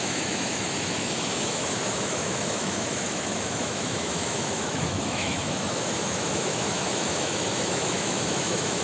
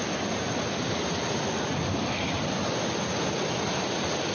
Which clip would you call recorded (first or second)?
second